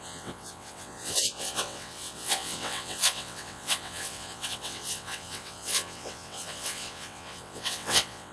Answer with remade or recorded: remade